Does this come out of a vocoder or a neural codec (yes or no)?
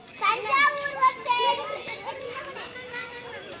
no